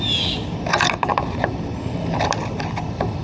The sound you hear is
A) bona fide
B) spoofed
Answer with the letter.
A